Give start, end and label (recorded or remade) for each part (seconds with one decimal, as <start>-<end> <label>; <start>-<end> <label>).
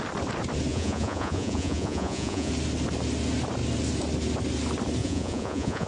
0.0-0.7 recorded; 0.7-2.5 remade; 2.5-5.0 recorded; 5.0-5.9 remade